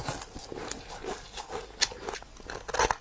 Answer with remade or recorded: recorded